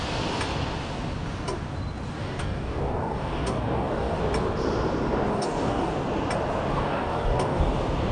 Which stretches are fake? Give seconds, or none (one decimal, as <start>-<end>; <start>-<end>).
2.2-4.2; 5.3-5.9; 6.7-7.6